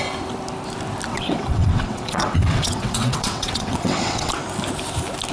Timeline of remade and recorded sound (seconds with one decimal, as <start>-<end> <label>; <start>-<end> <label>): 0.0-1.1 recorded; 1.1-4.3 remade; 4.3-5.3 recorded